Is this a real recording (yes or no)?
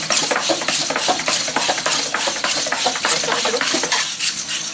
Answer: yes